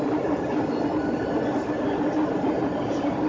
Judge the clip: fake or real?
real